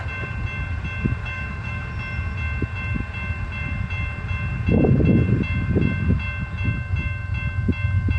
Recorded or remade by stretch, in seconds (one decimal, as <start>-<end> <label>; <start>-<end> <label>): 0.0-1.2 recorded; 1.2-1.8 remade; 1.8-8.2 recorded